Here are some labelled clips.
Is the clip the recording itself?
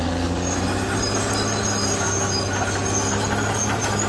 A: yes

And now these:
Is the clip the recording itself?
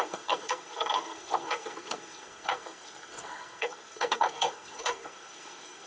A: no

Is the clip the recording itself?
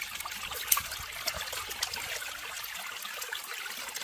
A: yes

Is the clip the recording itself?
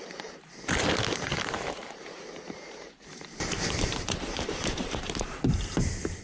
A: no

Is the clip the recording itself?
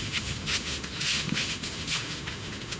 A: no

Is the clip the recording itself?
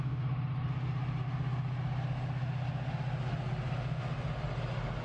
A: yes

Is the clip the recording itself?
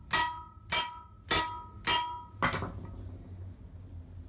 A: yes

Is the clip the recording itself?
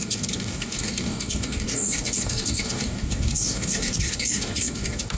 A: no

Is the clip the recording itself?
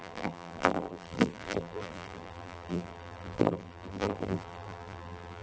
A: no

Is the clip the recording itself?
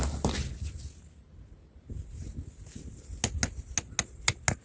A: yes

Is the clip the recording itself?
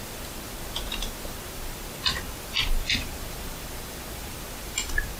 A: no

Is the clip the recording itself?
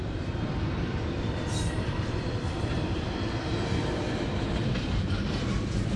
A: no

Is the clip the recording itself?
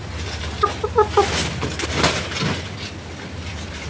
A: yes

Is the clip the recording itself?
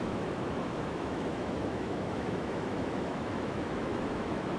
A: no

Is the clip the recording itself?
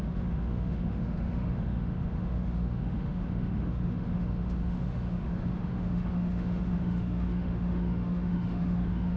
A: no